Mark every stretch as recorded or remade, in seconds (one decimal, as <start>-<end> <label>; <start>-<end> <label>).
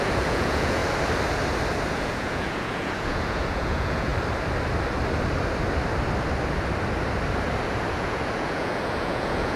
0.0-0.8 remade; 0.8-1.9 recorded; 1.9-4.1 remade; 4.1-7.9 recorded; 7.9-9.6 remade